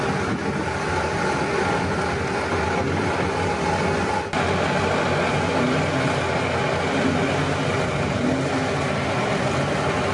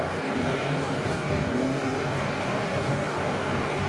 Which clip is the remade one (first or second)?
second